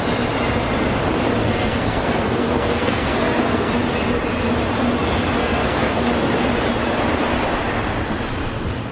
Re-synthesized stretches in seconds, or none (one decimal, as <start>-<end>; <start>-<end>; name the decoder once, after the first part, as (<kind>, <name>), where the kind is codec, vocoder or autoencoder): 1.4-3.7 (codec, SNAC); 5.4-6.0